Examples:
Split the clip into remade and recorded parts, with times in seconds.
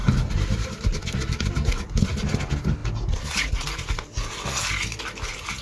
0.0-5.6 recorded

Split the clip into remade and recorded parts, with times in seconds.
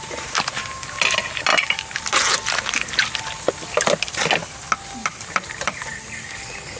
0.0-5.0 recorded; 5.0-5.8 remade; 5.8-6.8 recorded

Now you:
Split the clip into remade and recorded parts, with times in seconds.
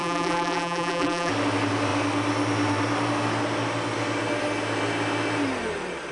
0.0-1.3 remade; 1.3-6.1 recorded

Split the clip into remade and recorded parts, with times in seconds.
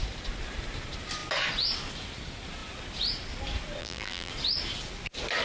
0.0-3.8 recorded; 3.8-4.3 remade; 4.3-5.4 recorded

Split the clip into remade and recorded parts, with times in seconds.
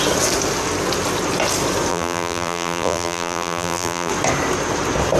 0.0-1.9 recorded; 1.9-4.1 remade; 4.1-5.2 recorded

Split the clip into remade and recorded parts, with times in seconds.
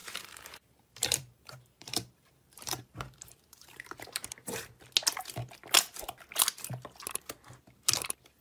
0.0-4.8 remade; 4.8-8.4 recorded